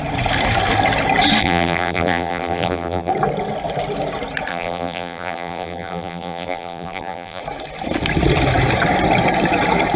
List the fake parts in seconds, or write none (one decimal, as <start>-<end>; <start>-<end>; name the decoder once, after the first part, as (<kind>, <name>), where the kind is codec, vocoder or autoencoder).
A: 1.4-3.1 (vocoder, BigVGAN v2); 4.5-7.4